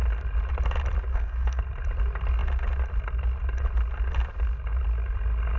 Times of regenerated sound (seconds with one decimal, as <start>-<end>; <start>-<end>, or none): 1.1-1.6